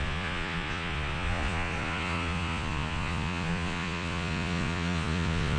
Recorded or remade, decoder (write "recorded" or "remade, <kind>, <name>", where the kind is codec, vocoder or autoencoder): remade, vocoder, Vocos